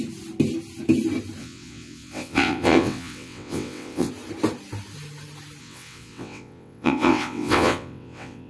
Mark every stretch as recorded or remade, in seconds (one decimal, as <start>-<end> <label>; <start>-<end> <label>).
0.0-1.4 recorded; 1.4-4.1 remade; 4.1-5.6 recorded; 5.6-8.5 remade